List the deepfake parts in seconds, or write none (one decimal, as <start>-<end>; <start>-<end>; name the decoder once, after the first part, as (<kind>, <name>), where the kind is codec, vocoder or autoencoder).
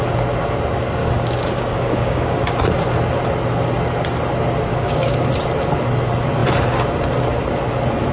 1.0-2.4 (codec, DAC); 4.7-5.3